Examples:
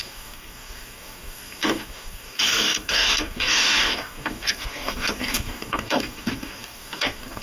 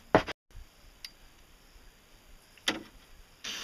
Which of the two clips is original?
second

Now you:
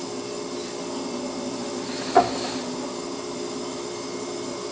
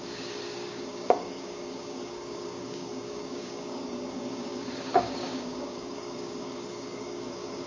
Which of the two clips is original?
first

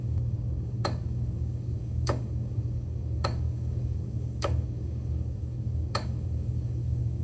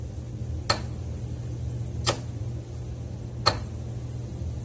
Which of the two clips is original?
second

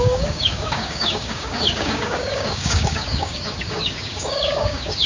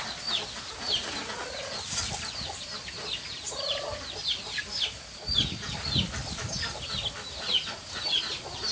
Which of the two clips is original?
second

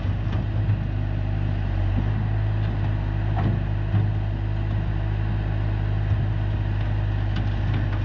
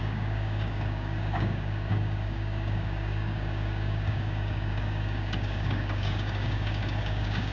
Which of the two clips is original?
first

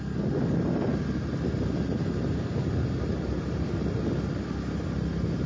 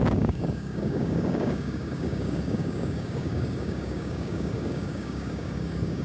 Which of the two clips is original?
first